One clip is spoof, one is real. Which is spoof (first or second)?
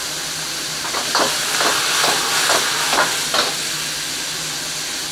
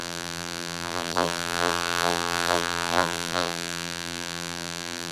second